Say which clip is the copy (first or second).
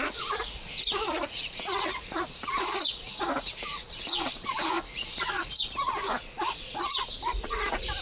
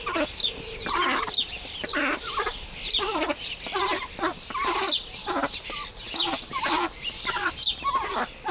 first